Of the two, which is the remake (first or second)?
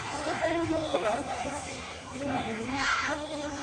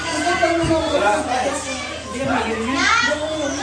first